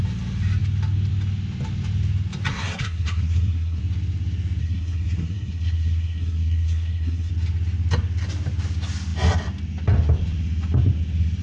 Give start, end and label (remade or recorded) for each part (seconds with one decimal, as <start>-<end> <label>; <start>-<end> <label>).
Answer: 0.0-2.5 recorded; 2.5-3.8 remade; 3.8-4.6 recorded; 4.6-7.3 remade; 7.3-11.4 recorded